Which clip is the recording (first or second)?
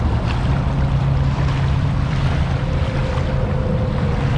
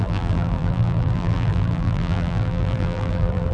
first